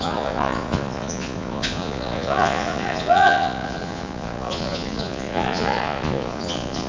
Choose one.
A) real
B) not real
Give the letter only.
B